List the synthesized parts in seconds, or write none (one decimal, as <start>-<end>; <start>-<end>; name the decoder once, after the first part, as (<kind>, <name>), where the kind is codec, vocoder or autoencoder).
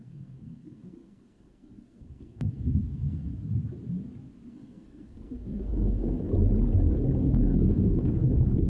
0.0-3.3 (codec, SNAC); 4.5-6.3; 7.2-8.7